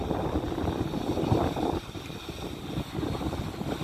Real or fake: real